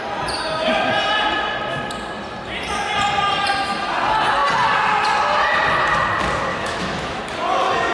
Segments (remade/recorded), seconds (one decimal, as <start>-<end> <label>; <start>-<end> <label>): 0.0-6.5 recorded; 6.5-7.2 remade; 7.2-7.9 recorded